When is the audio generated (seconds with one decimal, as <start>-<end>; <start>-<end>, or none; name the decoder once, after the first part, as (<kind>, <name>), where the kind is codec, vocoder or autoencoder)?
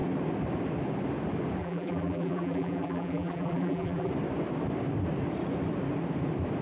1.6-4.1 (vocoder, BigVGAN v2)